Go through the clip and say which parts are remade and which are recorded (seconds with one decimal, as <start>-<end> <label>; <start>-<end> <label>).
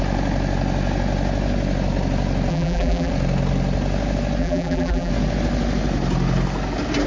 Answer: 0.0-2.5 recorded; 2.5-3.1 remade; 3.1-4.4 recorded; 4.4-5.1 remade; 5.1-7.1 recorded